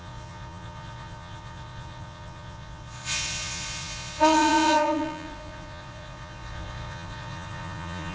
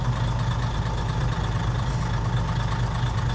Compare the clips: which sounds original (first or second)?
second